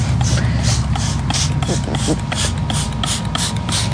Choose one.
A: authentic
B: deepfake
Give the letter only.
A